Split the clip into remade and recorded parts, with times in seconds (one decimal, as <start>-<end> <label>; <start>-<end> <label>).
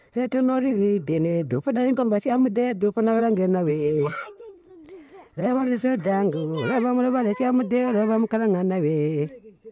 0.0-3.2 remade; 3.2-3.7 recorded; 3.7-4.7 remade; 4.7-5.4 recorded; 5.4-6.1 remade; 6.1-9.7 recorded